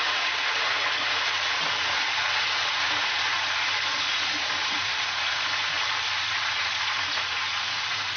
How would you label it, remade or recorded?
remade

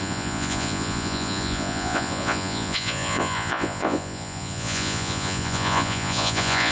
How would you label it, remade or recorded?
remade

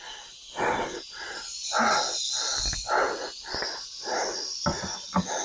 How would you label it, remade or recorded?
recorded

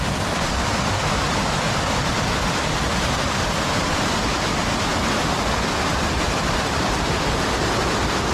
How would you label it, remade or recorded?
remade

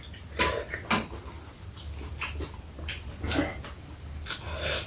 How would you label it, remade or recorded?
recorded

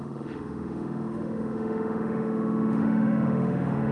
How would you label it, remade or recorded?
remade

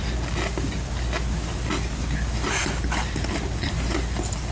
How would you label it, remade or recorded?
recorded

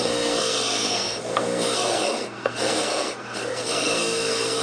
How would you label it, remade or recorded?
remade